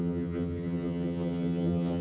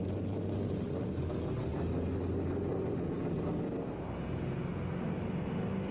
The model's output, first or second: first